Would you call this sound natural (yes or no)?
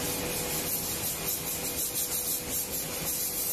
yes